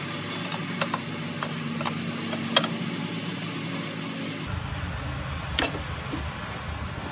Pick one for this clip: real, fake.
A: real